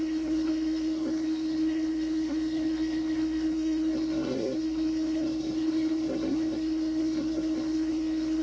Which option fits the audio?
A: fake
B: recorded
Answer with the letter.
A